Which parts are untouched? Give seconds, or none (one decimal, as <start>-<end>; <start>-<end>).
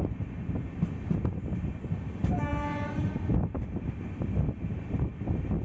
0.0-5.6